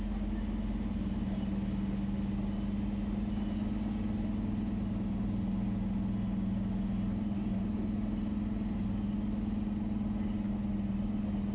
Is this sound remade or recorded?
recorded